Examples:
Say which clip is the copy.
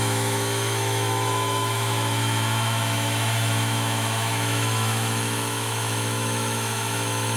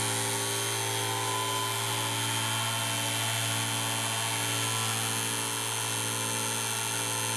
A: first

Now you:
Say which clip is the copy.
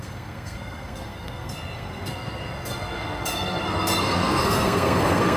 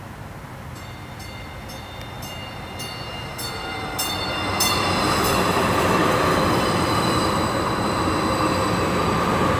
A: first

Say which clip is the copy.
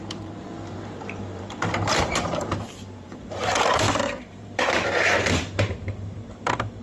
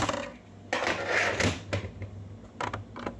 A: first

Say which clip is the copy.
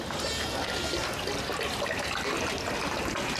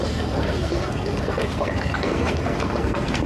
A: second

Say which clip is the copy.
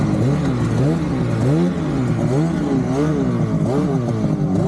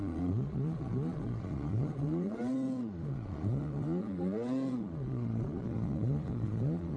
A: second